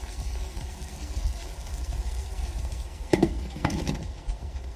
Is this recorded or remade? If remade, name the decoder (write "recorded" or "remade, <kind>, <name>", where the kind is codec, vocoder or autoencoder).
remade, codec, SNAC